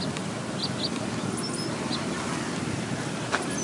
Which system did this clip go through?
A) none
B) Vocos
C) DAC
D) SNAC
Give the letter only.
A